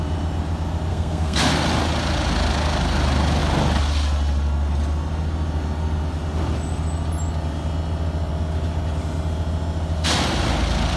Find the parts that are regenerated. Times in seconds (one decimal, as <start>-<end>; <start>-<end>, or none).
0.9-1.4